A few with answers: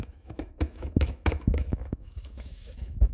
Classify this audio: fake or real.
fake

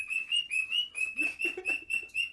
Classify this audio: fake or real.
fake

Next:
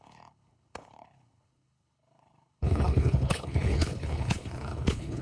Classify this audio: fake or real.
fake